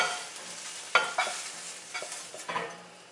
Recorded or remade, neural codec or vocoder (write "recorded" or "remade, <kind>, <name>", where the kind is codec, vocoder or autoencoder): recorded